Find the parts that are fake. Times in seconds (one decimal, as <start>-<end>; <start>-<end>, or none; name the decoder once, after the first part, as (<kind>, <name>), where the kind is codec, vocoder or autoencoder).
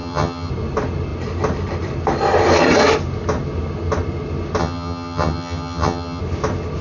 0.0-0.5 (vocoder, HiFi-GAN); 4.6-6.2